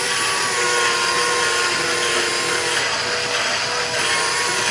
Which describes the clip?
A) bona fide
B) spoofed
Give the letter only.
A